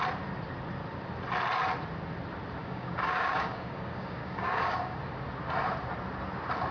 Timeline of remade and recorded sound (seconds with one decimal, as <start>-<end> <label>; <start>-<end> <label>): 0.0-2.6 recorded; 2.6-5.0 remade; 5.0-6.7 recorded